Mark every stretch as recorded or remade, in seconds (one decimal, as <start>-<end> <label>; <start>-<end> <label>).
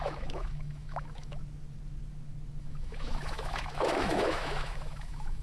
0.0-1.4 remade; 1.4-2.6 recorded; 2.6-5.4 remade